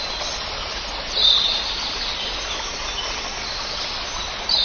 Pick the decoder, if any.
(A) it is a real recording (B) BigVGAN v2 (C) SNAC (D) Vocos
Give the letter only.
A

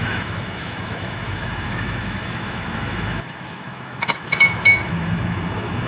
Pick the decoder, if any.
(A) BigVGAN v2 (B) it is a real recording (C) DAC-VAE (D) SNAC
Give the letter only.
C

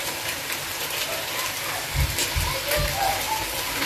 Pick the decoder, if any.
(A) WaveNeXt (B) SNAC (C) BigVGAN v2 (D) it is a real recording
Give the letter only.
C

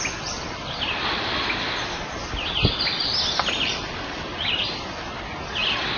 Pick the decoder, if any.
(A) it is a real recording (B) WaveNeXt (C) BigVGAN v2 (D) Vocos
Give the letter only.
A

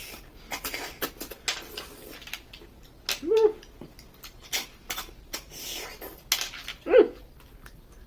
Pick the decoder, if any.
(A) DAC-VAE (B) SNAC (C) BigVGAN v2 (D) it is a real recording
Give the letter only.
D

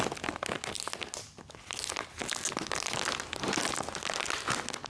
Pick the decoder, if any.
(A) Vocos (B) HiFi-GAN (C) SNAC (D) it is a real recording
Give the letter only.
D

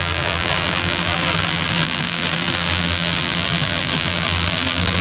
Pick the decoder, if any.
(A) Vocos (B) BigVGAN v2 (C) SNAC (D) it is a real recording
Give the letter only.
B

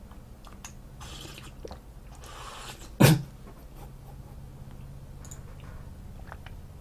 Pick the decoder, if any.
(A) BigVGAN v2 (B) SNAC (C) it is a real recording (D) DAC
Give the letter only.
C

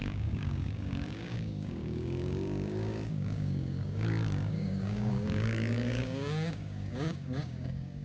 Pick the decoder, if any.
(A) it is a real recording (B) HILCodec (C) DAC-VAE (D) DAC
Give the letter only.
D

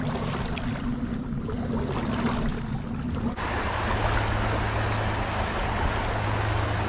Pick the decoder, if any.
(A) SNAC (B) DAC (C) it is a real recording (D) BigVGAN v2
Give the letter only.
C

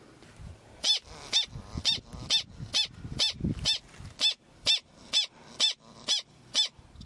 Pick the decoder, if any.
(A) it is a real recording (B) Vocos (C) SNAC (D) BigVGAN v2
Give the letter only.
A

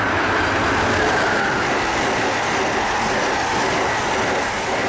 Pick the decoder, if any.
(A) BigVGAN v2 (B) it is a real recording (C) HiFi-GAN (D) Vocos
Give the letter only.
B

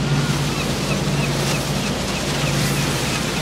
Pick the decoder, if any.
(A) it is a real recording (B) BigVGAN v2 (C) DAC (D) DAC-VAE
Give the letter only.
A